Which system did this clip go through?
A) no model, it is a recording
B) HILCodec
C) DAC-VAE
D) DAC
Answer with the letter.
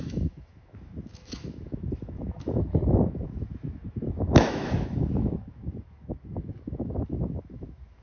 C